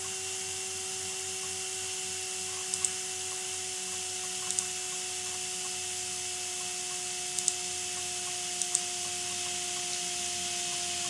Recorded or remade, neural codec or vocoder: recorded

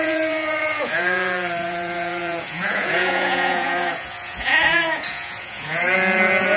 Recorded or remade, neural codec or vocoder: remade, vocoder, Vocos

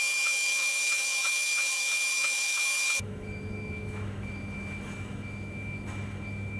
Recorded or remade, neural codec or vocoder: remade, autoencoder, DAC-VAE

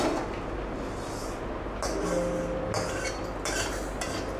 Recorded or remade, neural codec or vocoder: recorded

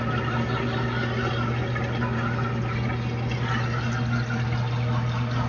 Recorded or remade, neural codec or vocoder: recorded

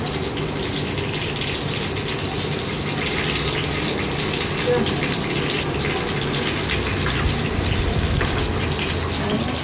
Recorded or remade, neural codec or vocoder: recorded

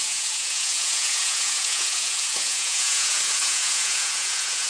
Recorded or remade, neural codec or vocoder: remade, vocoder, Vocos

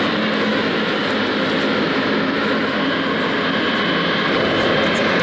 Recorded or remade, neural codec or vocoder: recorded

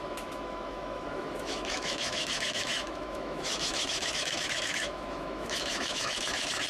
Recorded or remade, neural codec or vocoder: remade, autoencoder, DAC-VAE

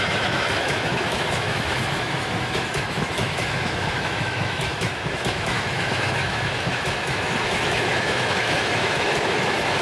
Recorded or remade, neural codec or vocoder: remade, autoencoder, DAC-VAE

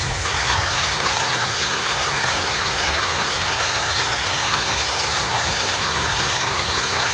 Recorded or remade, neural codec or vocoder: remade, codec, SNAC